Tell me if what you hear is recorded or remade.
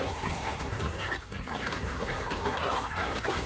remade